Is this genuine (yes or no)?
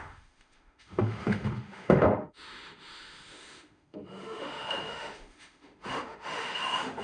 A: no